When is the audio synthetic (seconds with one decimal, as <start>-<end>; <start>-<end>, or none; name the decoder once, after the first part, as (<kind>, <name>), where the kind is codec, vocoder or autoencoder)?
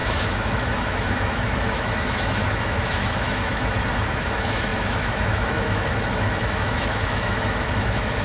0.0-8.2 (autoencoder, DAC-VAE)